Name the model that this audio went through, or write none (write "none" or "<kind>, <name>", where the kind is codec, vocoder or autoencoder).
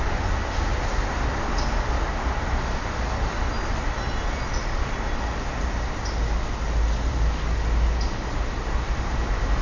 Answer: none